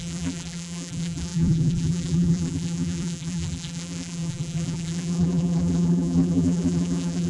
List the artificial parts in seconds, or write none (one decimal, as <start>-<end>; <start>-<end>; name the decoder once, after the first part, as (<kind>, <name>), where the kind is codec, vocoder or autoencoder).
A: 0.0-7.3 (vocoder, BigVGAN v2)